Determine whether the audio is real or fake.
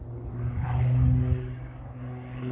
real